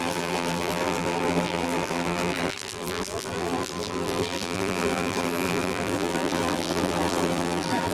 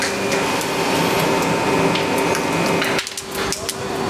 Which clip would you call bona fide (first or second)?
second